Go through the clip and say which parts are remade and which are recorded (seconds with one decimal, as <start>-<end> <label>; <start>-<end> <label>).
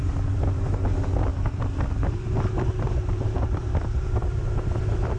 0.0-5.2 remade